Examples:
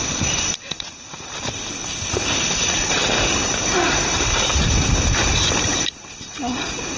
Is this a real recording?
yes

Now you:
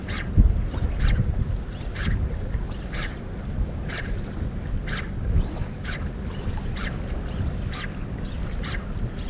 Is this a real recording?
yes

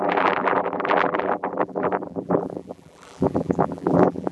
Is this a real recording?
no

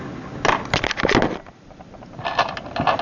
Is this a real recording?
yes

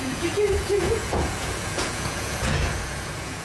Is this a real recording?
no